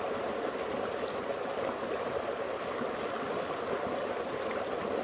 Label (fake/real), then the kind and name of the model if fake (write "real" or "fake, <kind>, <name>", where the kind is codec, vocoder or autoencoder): real